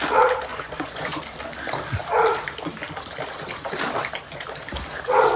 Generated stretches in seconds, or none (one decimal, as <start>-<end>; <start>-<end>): 0.5-1.2